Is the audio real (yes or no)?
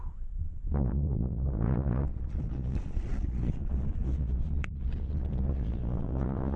no